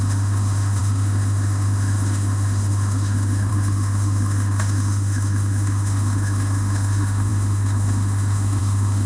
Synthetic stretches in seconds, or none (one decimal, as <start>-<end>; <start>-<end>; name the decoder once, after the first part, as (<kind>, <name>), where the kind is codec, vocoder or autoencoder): 0.0-9.1 (autoencoder, DAC-VAE)